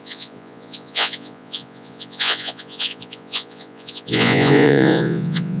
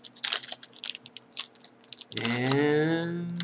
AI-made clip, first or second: first